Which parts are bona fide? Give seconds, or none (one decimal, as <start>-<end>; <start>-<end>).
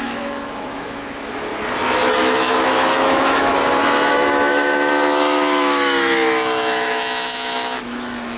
1.5-2.1; 3.5-4.1